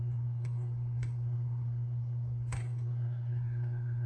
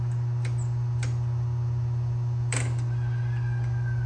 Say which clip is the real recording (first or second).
second